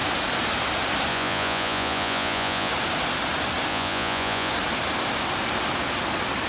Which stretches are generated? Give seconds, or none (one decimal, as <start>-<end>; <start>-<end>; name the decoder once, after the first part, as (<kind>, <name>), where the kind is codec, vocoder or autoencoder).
1.1-2.7 (vocoder, Vocos); 3.7-4.5